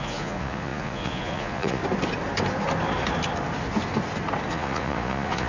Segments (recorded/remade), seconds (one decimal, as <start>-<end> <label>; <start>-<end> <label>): 0.0-1.8 remade; 1.8-4.5 recorded; 4.5-5.5 remade